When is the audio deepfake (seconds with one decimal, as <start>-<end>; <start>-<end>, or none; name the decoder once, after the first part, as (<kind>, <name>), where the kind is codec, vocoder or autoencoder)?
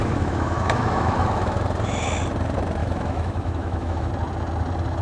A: 0.0-1.6 (autoencoder, DAC-VAE); 2.8-4.1